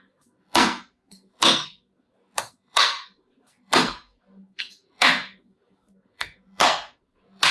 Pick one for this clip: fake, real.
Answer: fake